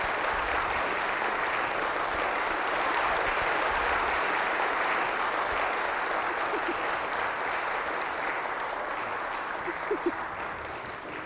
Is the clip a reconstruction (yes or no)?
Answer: no